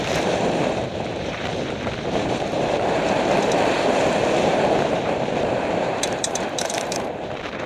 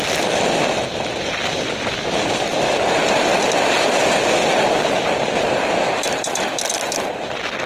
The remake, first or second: first